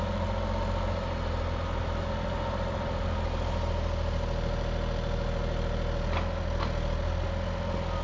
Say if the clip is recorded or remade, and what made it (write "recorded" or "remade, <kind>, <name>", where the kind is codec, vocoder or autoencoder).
recorded